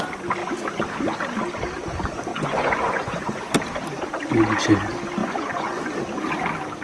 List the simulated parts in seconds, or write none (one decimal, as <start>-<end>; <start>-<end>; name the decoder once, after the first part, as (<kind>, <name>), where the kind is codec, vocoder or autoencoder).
2.3-3.4 (vocoder, Vocos); 5.2-5.9

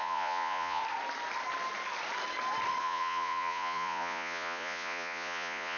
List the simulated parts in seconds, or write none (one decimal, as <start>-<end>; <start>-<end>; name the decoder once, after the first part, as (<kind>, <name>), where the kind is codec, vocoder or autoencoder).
0.0-0.8 (vocoder, Vocos); 2.8-5.8